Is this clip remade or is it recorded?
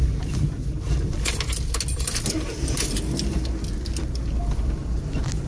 recorded